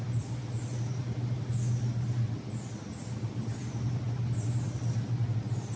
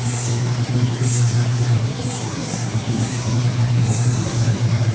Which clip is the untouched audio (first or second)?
first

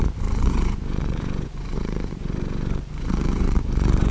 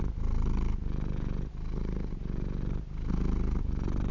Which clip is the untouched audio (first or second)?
second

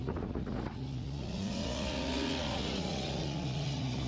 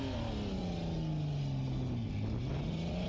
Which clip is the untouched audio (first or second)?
second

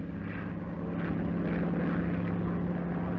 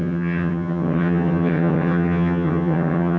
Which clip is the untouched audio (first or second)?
first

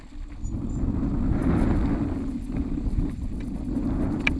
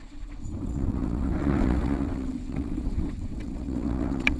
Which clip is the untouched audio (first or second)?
first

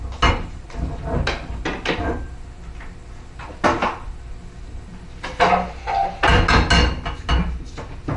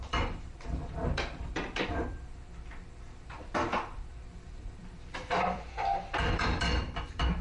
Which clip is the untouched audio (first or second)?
first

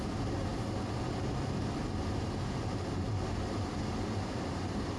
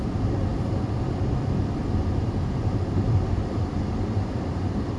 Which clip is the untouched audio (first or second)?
first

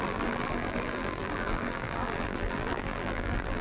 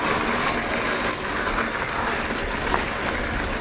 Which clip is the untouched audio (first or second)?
second